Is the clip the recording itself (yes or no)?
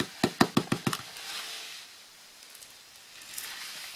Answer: yes